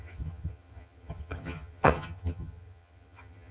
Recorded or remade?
remade